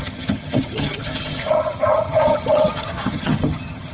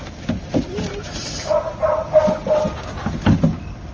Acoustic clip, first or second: second